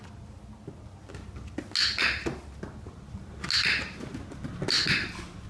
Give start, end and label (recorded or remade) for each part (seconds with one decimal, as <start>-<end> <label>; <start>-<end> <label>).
0.0-5.5 recorded